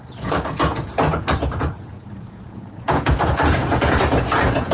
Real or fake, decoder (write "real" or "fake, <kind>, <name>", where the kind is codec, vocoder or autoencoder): fake, vocoder, Vocos